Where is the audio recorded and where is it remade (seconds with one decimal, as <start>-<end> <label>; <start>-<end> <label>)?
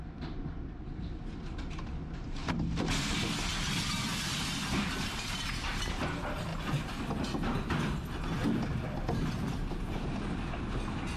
0.0-11.2 recorded